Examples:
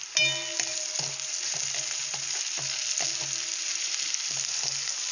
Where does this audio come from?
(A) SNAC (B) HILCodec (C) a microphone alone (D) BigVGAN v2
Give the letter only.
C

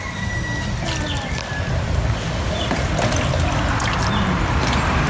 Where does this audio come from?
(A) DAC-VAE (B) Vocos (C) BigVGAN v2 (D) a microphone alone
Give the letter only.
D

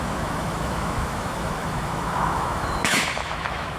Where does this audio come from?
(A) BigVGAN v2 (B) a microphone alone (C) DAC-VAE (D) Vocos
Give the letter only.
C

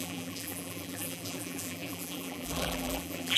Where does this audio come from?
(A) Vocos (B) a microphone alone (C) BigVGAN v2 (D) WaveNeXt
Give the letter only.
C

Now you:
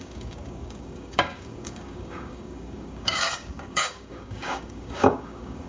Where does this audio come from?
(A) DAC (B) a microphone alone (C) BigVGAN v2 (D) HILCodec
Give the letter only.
A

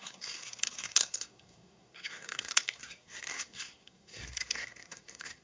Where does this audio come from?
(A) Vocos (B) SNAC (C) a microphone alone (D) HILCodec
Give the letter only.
B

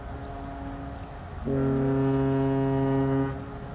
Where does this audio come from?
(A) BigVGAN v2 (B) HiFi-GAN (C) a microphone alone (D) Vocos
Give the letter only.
C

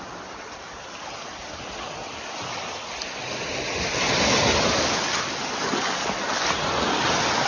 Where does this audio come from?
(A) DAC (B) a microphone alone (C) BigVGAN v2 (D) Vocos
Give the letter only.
B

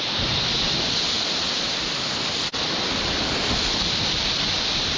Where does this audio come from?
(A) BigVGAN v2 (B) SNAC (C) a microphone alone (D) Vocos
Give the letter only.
C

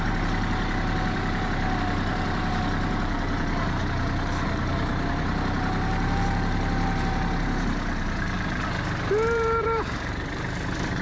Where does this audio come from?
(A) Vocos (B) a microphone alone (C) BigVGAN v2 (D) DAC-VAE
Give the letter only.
C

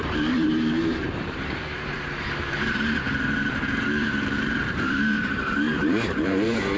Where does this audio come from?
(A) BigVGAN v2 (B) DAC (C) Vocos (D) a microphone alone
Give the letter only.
A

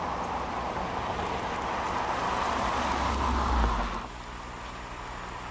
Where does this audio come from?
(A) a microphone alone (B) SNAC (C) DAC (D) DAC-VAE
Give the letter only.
A